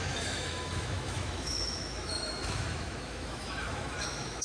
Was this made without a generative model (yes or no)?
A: no